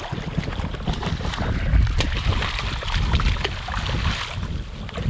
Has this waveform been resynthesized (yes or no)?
no